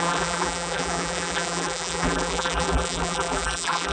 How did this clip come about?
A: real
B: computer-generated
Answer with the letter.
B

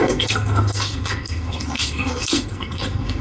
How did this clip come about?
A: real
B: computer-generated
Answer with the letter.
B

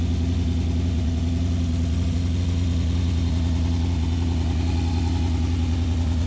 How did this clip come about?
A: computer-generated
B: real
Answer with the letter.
B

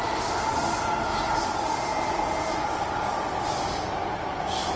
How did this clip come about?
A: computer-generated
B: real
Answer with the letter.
B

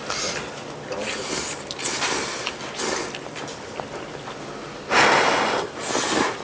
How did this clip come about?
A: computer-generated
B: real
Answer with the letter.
B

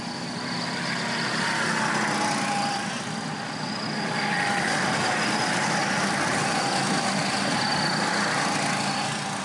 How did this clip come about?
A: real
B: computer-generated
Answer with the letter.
A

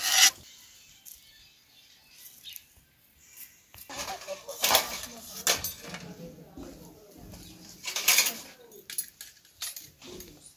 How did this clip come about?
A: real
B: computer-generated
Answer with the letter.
A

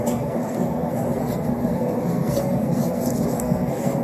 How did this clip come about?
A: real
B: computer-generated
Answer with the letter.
B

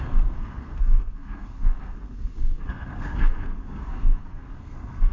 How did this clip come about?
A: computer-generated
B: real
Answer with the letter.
A